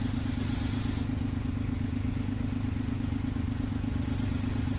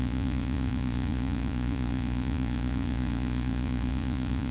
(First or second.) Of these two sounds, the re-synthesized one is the second